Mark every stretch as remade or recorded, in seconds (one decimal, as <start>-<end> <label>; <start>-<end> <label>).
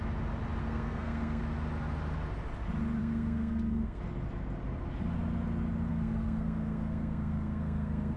0.0-0.6 recorded; 0.6-1.4 remade; 1.4-3.0 recorded; 3.0-4.0 remade; 4.0-5.9 recorded; 5.9-8.2 remade